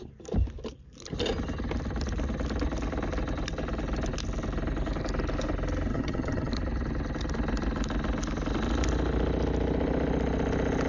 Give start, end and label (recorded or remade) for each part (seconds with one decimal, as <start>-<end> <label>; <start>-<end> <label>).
0.0-5.9 recorded; 5.9-6.5 remade; 6.5-10.9 recorded